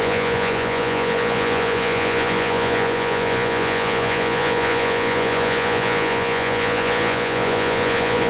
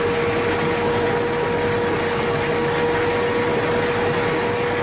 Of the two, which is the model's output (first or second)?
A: first